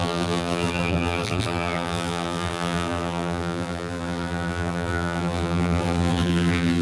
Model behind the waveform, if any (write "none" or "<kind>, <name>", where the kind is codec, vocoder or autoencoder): vocoder, BigVGAN v2